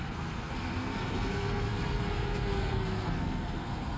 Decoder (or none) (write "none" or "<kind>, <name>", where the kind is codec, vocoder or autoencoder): codec, SNAC